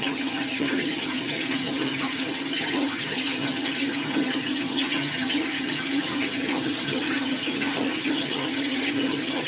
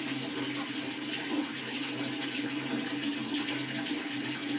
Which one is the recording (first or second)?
second